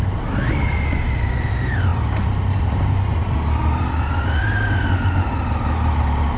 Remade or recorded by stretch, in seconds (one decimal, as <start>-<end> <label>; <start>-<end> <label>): 0.0-6.4 recorded